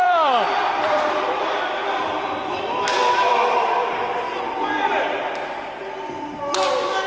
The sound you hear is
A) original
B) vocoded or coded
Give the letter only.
B